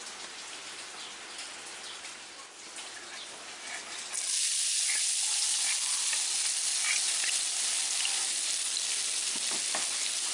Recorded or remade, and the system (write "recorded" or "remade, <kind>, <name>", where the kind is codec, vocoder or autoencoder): recorded